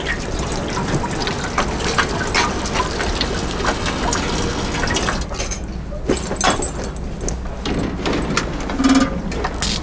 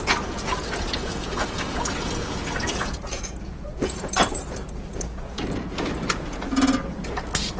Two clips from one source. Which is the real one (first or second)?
first